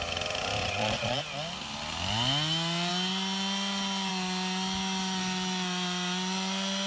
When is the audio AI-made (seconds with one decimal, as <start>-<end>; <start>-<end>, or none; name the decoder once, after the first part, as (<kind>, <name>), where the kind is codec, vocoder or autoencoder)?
0.6-1.2 (vocoder, Vocos)